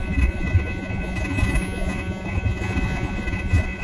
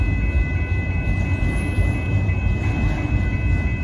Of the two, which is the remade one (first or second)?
first